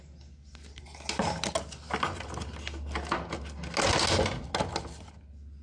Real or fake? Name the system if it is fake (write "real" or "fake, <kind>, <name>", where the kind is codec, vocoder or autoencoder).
real